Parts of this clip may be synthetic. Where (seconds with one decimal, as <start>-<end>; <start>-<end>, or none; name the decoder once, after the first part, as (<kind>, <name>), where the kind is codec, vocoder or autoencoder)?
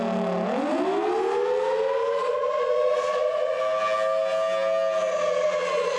2.2-3.6 (vocoder, Vocos); 5.1-6.0